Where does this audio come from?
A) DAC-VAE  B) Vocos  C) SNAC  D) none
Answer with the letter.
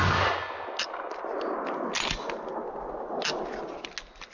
D